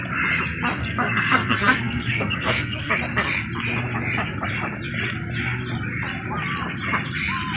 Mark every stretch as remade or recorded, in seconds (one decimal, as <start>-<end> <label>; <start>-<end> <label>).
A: 0.0-0.8 recorded; 0.8-2.9 remade; 2.9-7.6 recorded